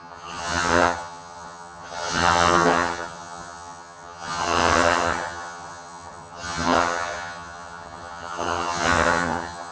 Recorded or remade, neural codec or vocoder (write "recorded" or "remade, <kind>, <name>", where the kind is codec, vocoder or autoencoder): remade, vocoder, HiFi-GAN